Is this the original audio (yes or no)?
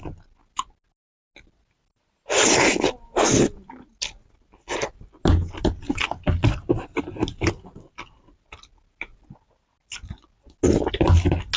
yes